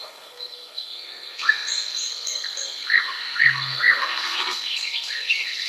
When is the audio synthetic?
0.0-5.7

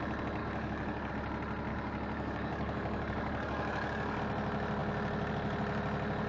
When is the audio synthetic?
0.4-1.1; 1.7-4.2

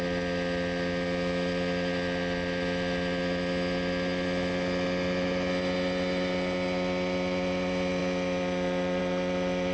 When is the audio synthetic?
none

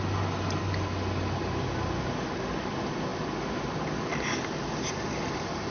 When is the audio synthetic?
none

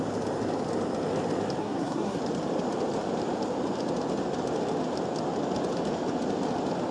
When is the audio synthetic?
1.6-2.2